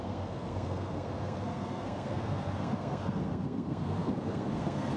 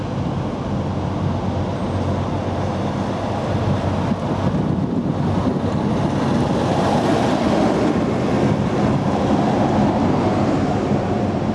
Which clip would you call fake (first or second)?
first